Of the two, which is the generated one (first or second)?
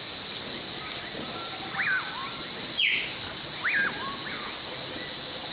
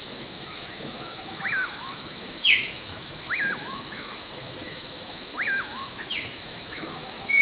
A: second